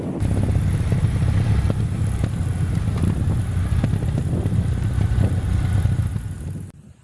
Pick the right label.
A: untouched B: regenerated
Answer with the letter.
A